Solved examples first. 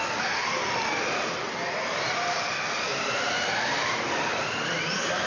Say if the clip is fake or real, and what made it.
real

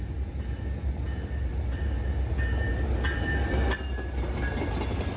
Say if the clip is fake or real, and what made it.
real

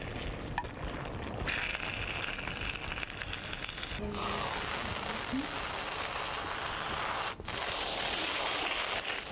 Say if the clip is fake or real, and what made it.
real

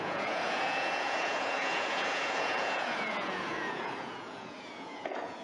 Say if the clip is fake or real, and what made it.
fake, vocoder, Vocos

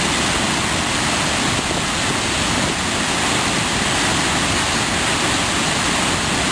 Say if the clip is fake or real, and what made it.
real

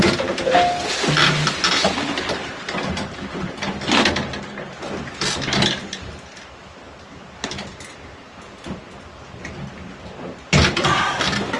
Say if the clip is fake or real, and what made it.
real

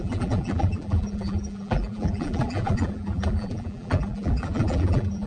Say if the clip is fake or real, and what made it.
fake, vocoder, BigVGAN v2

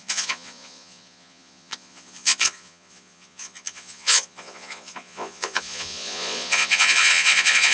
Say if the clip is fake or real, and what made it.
fake, vocoder, Vocos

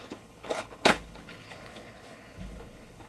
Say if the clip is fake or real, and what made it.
fake, codec, HILCodec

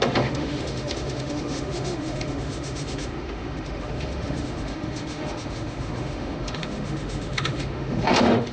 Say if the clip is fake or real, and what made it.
fake, autoencoder, DAC-VAE